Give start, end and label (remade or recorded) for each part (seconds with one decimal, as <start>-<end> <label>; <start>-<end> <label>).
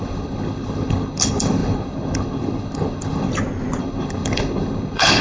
0.0-3.3 remade; 3.3-3.8 recorded; 3.8-5.2 remade